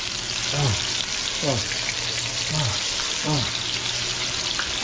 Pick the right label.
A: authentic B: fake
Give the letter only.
A